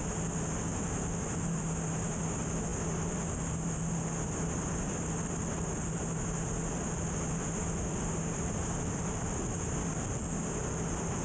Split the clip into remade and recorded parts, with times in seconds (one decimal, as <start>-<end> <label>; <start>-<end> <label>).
0.0-8.6 recorded; 8.6-10.2 remade; 10.2-11.2 recorded